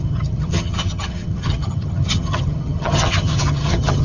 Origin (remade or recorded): remade